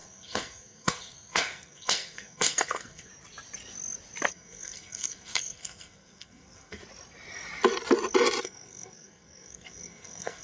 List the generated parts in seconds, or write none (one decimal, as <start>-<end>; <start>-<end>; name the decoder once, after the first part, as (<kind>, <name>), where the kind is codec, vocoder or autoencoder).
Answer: 0.0-3.1 (codec, SNAC); 4.3-6.8; 8.4-10.4